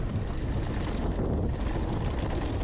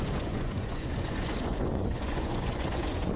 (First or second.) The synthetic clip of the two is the second